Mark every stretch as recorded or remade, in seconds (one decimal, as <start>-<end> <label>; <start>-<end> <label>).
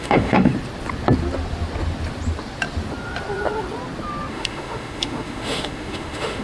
0.0-0.5 remade; 0.5-4.3 recorded; 4.3-6.4 remade